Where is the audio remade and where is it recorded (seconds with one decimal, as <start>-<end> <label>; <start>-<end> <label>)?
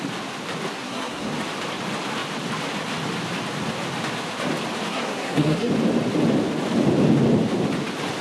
0.0-0.7 recorded; 0.7-1.3 remade; 1.3-4.9 recorded; 4.9-5.7 remade; 5.7-8.2 recorded